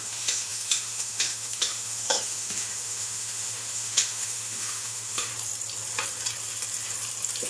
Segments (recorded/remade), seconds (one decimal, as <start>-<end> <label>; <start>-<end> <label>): 0.0-5.3 remade; 5.3-7.5 recorded